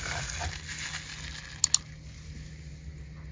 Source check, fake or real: real